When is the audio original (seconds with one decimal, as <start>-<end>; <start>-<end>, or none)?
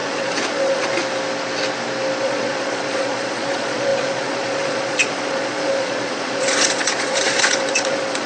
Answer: 1.0-2.2